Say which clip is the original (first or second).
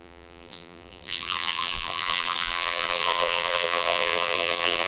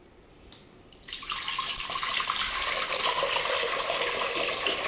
second